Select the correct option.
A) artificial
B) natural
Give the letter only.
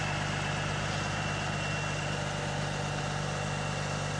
B